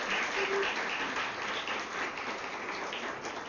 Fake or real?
real